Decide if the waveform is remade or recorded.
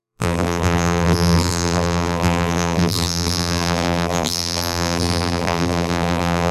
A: remade